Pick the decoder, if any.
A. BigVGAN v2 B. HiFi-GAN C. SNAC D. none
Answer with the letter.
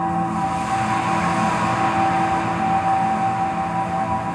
D